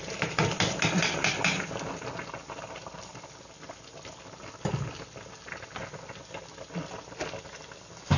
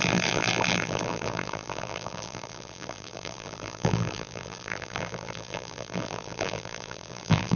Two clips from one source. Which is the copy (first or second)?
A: second